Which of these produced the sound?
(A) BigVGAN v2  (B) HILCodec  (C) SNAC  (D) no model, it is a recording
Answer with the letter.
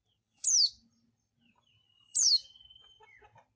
A